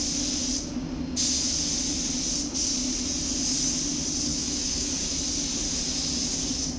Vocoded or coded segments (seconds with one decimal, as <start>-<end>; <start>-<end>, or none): 4.3-4.9